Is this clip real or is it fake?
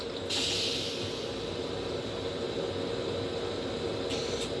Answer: real